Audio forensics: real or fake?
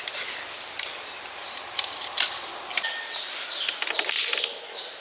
real